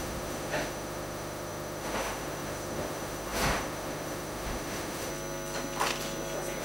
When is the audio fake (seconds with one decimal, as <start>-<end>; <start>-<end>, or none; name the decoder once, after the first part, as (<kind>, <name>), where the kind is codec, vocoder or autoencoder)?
0.0-5.1 (autoencoder, DAC-VAE)